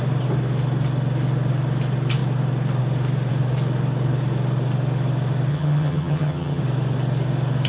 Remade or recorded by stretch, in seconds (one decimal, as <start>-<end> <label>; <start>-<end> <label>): 0.0-5.5 recorded; 5.5-6.6 remade; 6.6-7.7 recorded